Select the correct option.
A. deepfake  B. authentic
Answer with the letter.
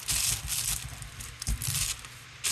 B